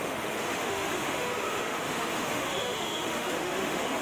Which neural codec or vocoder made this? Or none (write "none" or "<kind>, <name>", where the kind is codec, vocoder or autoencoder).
autoencoder, DAC-VAE